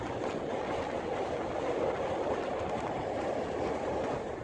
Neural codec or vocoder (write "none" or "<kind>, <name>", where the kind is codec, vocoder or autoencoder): none